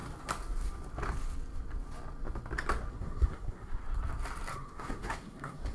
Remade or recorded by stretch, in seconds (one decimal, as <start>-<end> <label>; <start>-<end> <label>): 0.0-2.9 recorded; 2.9-3.8 remade; 3.8-4.5 recorded; 4.5-5.7 remade